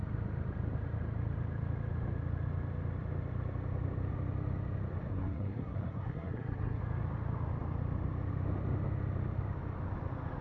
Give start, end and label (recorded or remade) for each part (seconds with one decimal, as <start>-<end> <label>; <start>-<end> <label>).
0.0-5.1 recorded; 5.1-6.8 remade; 6.8-10.4 recorded